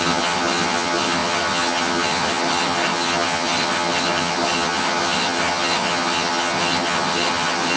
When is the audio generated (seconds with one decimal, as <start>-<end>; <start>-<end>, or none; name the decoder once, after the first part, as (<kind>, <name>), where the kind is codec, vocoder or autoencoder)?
0.0-7.8 (vocoder, HiFi-GAN)